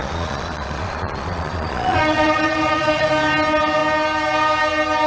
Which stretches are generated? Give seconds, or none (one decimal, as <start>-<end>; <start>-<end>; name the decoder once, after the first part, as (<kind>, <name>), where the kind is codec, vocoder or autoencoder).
0.0-3.1 (vocoder, Vocos)